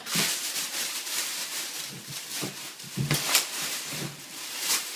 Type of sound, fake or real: fake